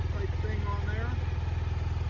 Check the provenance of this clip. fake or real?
real